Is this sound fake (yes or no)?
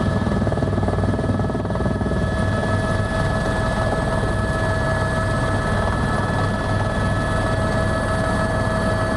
no